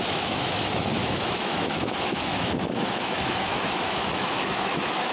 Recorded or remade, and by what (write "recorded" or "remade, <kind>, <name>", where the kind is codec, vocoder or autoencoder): remade, autoencoder, DAC-VAE